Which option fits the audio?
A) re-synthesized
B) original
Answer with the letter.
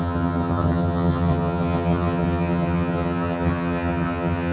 A